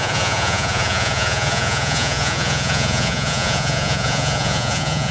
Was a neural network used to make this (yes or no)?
yes